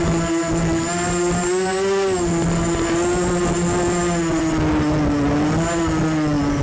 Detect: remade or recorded recorded